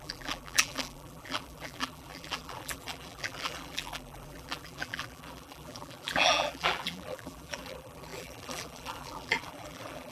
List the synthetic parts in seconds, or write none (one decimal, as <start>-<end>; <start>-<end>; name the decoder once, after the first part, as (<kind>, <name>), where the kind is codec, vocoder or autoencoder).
0.0-10.1 (vocoder, BigVGAN v2)